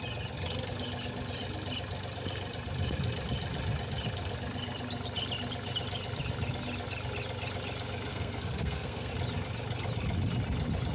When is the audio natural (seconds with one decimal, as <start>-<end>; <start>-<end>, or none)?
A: 0.0-8.1; 9.1-10.9